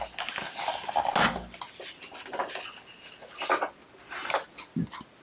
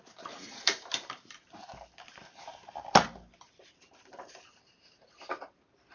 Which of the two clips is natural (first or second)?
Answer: first